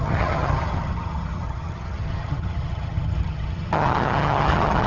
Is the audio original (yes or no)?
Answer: no